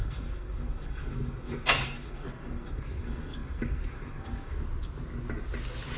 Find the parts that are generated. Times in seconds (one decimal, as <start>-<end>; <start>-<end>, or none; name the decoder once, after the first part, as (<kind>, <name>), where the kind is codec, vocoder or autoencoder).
0.0-4.6 (codec, SNAC)